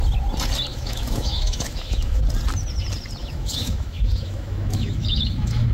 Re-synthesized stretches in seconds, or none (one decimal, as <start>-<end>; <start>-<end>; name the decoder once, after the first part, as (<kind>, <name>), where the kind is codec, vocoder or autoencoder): 0.7-2.2 (autoencoder, DAC-VAE); 3.2-5.7